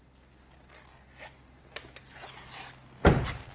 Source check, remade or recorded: recorded